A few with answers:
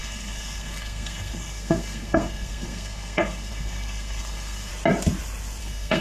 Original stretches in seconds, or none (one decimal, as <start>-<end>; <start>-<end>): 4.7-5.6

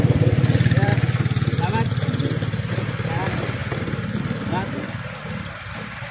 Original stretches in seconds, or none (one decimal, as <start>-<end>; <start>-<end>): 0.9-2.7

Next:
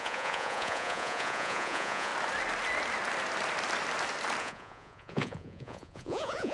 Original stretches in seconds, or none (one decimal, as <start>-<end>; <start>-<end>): 2.1-4.4